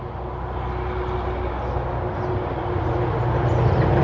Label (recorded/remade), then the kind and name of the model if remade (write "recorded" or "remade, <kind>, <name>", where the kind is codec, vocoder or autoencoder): recorded